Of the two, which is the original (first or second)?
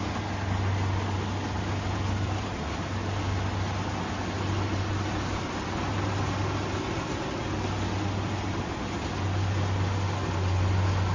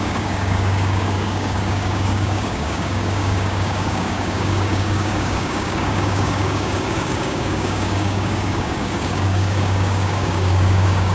first